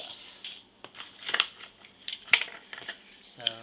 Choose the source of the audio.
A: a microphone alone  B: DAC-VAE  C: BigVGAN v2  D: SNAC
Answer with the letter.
C